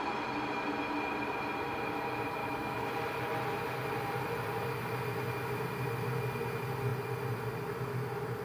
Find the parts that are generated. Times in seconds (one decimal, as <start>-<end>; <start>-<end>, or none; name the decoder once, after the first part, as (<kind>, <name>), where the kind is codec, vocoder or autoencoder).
2.4-2.9 (autoencoder, DAC-VAE)